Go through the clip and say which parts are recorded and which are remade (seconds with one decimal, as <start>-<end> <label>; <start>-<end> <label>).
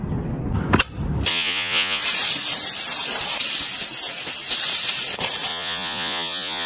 0.0-1.3 recorded; 1.3-2.0 remade; 2.0-5.5 recorded; 5.5-6.7 remade